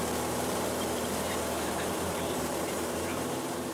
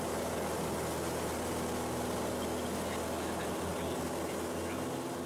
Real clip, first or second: second